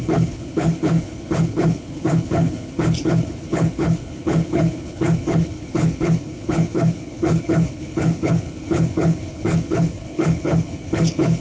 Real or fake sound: fake